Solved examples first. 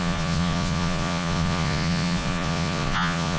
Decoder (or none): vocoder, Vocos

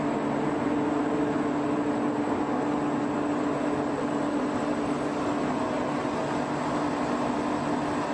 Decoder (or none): none